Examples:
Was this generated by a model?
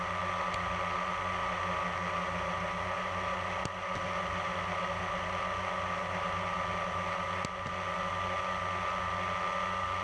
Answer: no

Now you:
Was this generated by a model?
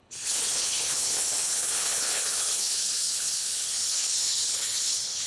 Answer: yes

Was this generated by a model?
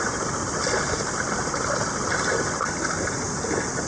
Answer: no